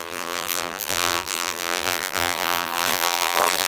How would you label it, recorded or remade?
remade